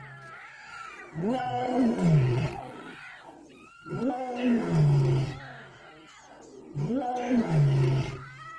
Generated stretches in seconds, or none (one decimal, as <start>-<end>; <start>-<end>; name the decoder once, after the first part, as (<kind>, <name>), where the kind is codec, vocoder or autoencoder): 0.7-4.1 (vocoder, Vocos)